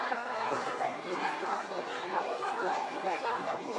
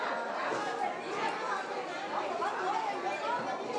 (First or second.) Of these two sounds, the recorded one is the second